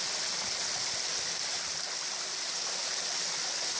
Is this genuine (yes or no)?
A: yes